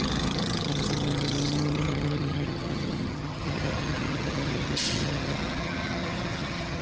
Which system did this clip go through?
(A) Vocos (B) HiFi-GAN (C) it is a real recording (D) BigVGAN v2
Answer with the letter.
B